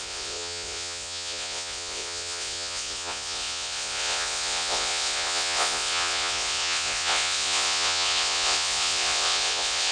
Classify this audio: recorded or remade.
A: remade